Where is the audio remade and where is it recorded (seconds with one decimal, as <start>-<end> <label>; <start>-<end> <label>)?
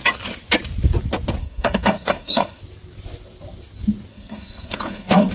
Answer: 0.0-1.4 recorded; 1.4-2.6 remade; 2.6-4.1 recorded; 4.1-5.3 remade